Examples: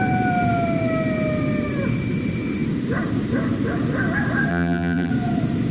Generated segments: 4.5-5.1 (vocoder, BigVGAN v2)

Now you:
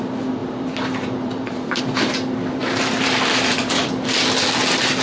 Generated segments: 0.4-1.8 (vocoder, BigVGAN v2); 2.6-4.0

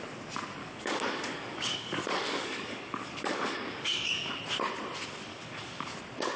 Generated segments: 0.6-4.4 (codec, DAC); 5.3-6.0

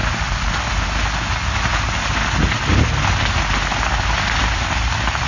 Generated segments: 0.0-0.6 (vocoder, BigVGAN v2)